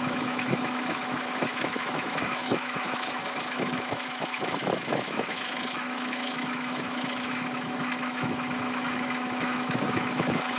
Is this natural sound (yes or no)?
no